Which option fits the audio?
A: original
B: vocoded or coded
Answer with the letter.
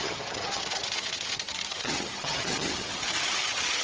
B